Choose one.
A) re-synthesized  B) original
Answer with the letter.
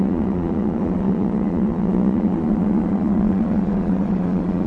A